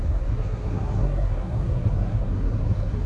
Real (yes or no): no